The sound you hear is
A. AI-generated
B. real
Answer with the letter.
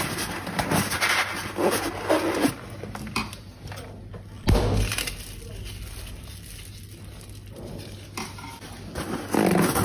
B